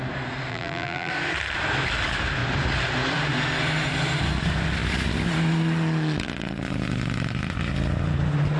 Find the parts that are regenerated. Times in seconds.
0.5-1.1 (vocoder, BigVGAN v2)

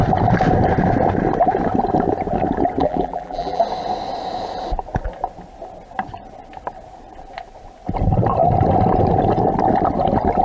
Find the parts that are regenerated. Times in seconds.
2.8-3.6 (vocoder, BigVGAN v2)

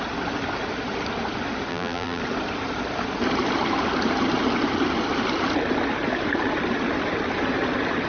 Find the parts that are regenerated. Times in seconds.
1.7-2.2 (vocoder, BigVGAN v2)

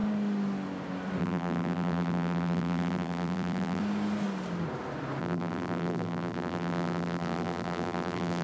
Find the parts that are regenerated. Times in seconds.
1.2-3.8 (vocoder, BigVGAN v2); 5.2-8.4

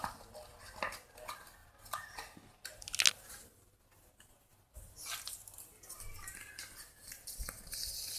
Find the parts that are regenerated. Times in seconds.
4.5-5.3 (vocoder, BigVGAN v2)

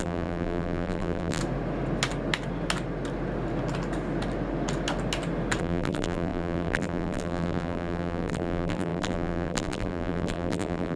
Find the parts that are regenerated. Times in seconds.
0.0-1.4 (vocoder, BigVGAN v2); 5.6-11.0

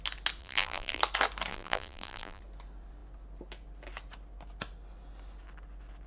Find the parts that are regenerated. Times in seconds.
0.4-1.0 (vocoder, BigVGAN v2); 1.5-2.4